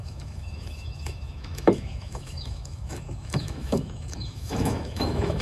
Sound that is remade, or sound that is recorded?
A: remade